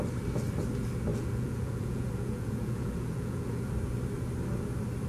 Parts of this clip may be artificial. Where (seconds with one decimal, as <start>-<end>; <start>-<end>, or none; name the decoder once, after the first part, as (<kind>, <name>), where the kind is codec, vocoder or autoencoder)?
1.1-3.7 (vocoder, Vocos)